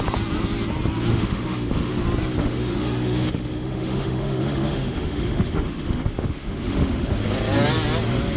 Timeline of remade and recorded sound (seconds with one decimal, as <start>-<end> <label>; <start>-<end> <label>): 0.0-1.1 recorded; 1.1-1.9 remade; 1.9-2.4 recorded; 2.4-7.2 remade; 7.2-8.4 recorded